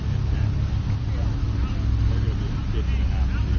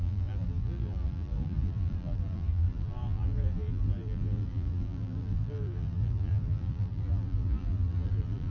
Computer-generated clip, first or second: second